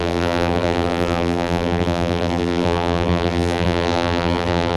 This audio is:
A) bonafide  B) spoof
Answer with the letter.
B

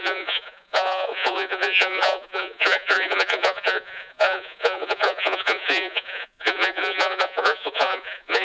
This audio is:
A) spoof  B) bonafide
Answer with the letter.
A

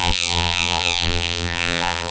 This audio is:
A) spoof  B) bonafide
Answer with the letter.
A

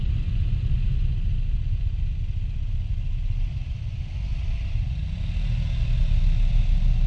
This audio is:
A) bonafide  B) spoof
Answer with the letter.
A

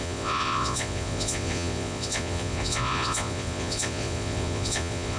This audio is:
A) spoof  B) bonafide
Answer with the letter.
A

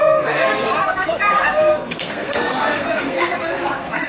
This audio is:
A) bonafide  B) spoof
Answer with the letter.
B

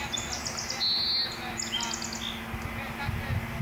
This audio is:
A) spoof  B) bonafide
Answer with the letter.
B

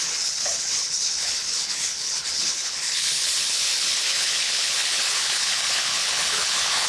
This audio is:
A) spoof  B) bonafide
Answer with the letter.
A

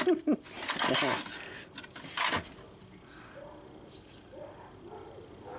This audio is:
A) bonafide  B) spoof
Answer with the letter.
A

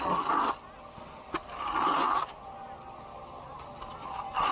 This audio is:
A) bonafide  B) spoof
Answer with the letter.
A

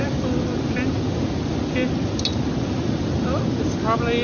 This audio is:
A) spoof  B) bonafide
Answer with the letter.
B